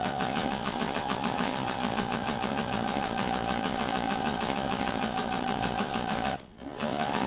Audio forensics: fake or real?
fake